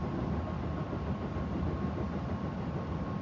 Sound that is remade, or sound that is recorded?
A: recorded